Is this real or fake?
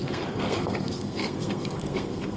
fake